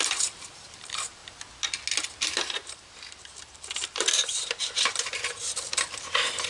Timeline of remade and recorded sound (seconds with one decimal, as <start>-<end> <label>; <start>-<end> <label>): 0.0-1.2 remade; 1.2-2.2 recorded; 2.2-6.5 remade